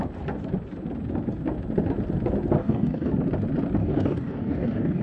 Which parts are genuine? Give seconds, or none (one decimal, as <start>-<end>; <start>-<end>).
0.0-2.6; 3.1-3.8